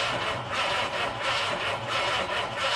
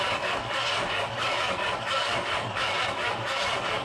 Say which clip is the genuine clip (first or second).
first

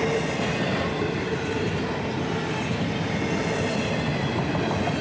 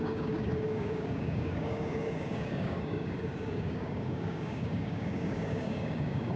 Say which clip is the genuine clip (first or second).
first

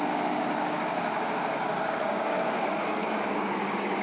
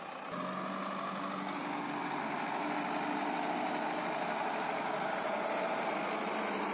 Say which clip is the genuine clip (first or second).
second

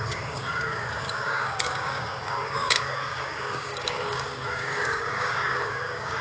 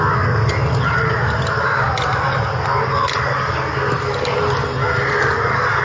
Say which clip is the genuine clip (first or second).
second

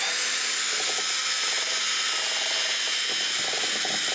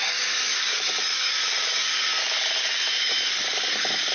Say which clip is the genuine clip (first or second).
first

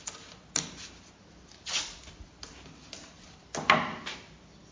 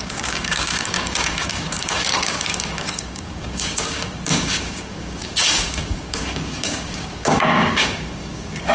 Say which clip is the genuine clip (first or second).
first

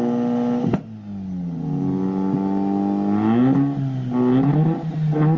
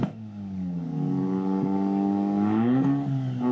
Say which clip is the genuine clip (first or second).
first